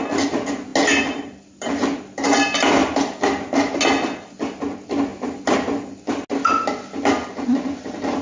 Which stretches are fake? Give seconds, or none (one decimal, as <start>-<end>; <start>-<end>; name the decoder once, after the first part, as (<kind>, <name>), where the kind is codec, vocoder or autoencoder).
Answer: none